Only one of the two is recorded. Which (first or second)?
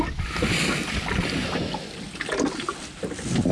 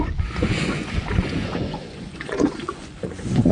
first